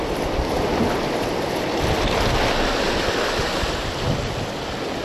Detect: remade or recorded recorded